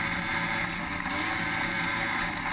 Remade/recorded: recorded